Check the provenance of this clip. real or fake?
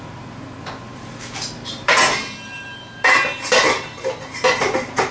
fake